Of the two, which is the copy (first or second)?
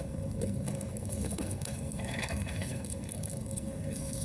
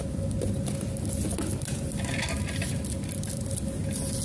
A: first